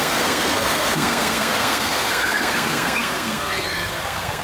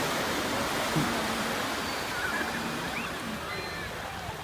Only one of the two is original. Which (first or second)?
second